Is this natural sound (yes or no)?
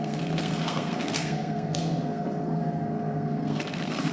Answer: no